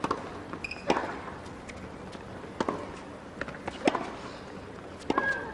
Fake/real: real